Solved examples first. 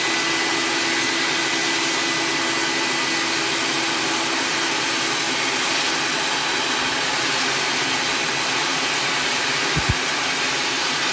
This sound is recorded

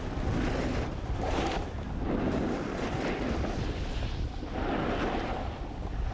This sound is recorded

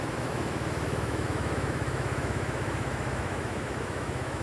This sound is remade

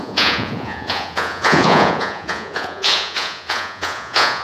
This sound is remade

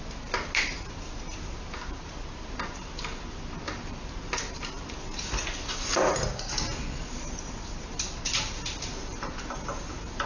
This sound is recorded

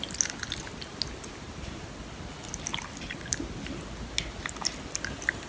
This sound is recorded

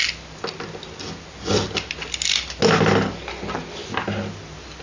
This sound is recorded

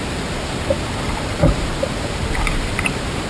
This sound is remade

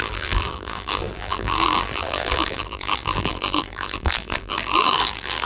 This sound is remade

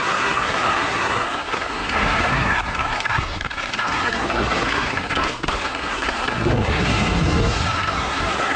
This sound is remade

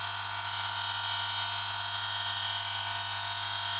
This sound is recorded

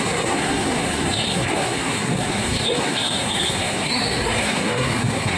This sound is remade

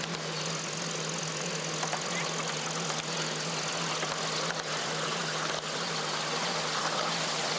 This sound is recorded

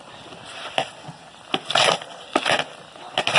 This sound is recorded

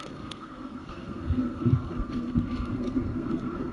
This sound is remade